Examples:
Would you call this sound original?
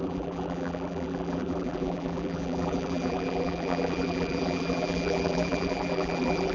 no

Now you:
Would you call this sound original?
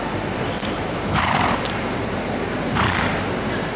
no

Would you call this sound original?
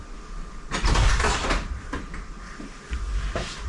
yes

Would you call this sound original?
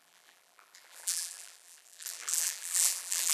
no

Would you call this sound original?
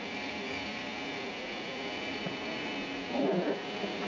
yes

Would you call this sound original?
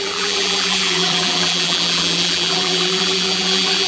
no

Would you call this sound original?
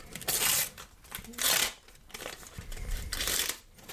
yes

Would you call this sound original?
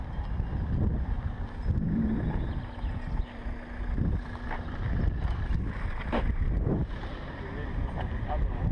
no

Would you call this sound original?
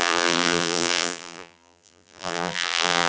no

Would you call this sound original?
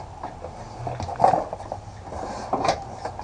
yes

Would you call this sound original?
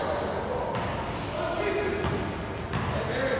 yes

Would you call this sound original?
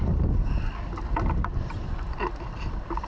no